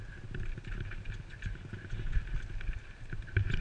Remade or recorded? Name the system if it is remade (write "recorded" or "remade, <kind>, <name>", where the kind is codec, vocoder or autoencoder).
recorded